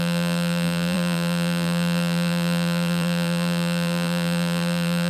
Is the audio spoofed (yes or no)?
yes